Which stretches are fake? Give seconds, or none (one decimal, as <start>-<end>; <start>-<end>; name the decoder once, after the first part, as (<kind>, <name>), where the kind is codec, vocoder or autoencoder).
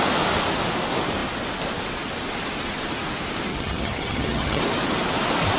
3.5-4.6 (vocoder, HiFi-GAN)